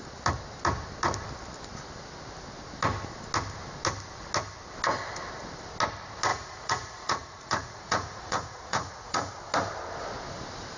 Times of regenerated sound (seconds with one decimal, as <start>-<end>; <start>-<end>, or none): 6.3-9.4